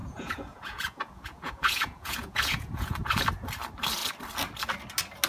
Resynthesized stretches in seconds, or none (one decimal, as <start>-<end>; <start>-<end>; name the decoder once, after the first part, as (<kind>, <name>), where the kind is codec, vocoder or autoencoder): 0.0-3.2 (vocoder, Vocos)